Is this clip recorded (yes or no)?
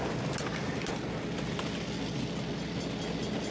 yes